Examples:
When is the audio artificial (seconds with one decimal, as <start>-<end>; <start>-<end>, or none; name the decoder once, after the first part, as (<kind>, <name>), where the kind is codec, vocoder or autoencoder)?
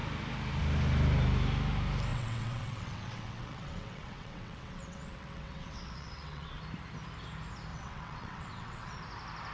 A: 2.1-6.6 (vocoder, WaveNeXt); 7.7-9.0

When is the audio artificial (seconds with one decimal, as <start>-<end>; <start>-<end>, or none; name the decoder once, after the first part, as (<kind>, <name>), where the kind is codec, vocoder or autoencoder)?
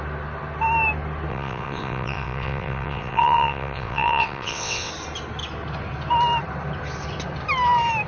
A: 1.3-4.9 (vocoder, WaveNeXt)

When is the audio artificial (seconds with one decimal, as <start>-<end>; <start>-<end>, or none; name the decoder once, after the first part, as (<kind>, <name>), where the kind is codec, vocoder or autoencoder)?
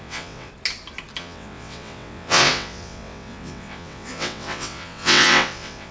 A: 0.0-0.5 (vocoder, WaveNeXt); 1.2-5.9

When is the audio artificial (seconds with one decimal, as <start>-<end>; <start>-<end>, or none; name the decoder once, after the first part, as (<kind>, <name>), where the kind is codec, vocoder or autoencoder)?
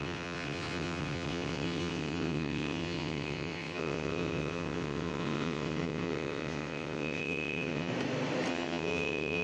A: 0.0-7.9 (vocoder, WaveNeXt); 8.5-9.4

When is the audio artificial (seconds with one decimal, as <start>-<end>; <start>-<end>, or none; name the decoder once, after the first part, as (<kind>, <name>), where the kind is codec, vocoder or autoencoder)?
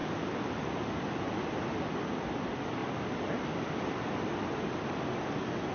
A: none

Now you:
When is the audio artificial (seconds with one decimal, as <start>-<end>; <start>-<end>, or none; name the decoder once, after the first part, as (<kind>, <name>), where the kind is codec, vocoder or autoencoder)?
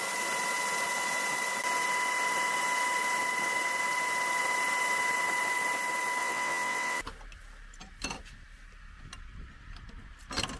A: 6.2-7.0 (vocoder, WaveNeXt)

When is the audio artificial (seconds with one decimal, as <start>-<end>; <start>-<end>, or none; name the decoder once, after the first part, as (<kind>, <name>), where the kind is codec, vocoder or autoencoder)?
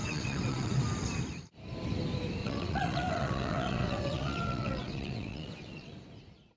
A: 0.0-0.8 (vocoder, WaveNeXt); 2.4-5.9